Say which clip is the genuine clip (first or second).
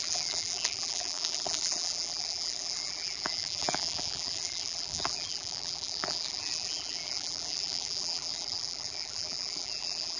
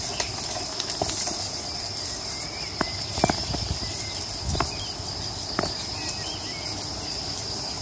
second